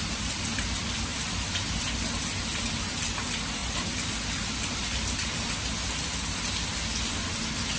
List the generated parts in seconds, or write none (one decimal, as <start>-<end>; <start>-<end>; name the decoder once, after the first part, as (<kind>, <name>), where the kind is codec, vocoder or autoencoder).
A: 1.1-1.7 (vocoder, BigVGAN v2); 3.6-5.5